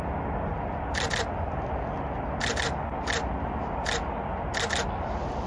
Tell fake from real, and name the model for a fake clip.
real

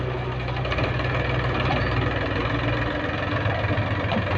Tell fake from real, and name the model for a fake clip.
real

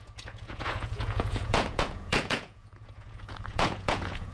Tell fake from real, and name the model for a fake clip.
fake, vocoder, Vocos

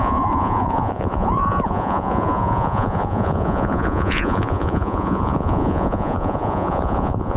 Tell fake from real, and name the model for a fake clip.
fake, vocoder, Vocos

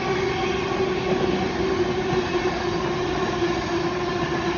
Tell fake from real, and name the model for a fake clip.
real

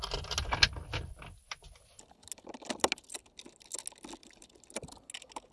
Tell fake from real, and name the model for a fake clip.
real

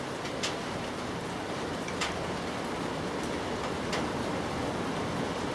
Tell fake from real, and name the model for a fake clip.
real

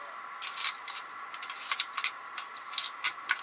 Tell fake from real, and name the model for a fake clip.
real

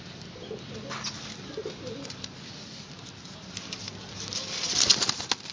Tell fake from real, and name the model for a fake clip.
real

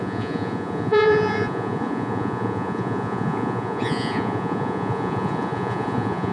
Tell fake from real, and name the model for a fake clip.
fake, vocoder, Vocos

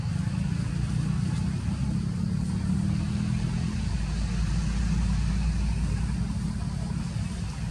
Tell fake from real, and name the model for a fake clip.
real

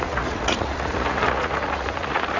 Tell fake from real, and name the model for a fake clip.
fake, vocoder, Vocos